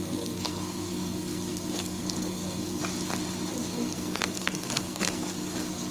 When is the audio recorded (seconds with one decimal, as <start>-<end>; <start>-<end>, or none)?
2.8-3.5